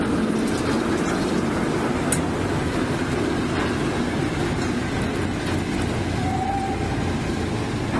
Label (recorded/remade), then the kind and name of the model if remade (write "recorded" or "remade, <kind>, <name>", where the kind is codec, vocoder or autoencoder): recorded